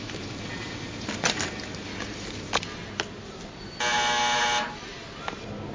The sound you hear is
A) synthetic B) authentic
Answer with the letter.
B